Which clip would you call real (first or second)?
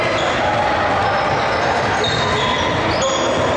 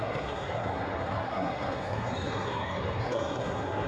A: first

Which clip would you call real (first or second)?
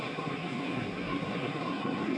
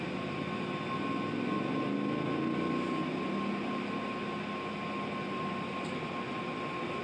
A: second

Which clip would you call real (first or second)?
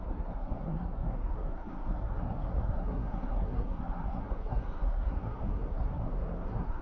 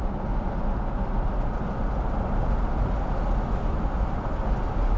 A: second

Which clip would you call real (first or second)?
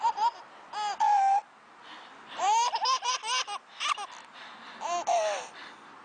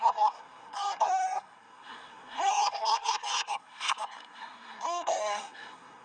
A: first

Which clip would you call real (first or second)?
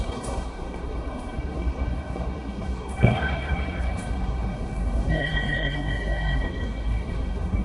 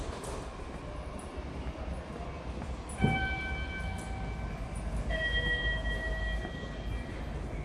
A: second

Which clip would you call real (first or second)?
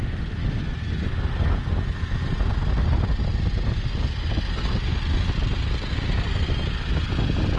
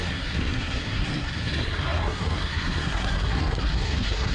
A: first